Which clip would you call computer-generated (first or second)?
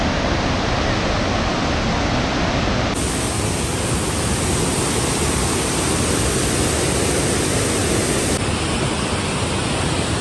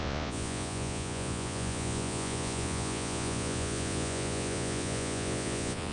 second